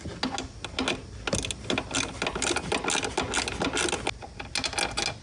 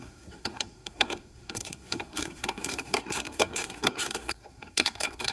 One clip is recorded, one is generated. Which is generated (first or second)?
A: second